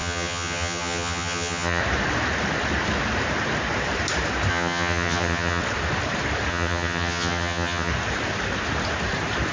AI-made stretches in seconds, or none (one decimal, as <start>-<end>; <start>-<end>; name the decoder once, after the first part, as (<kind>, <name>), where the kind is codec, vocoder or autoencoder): 0.0-1.8 (vocoder, HiFi-GAN); 4.5-5.6; 6.5-7.9